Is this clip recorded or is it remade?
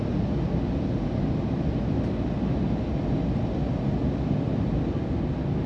recorded